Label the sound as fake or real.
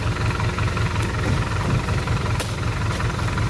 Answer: real